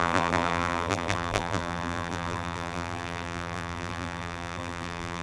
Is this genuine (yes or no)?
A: no